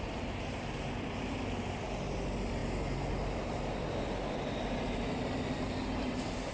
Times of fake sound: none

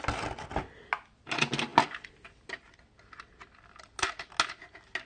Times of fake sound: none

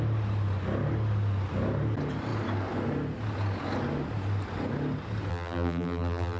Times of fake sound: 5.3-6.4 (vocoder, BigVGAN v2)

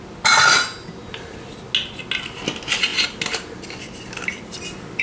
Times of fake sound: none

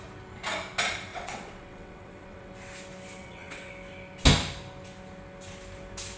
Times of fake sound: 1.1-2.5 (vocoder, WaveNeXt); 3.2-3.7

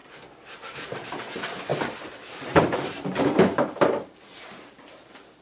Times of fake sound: 0.0-1.2 (vocoder, BigVGAN v2); 1.7-4.9

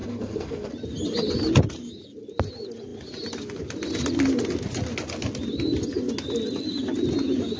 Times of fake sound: 0.0-0.7 (codec, SNAC)

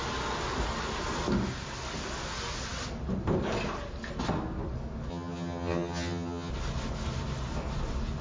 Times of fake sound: 5.1-6.5 (vocoder, HiFi-GAN)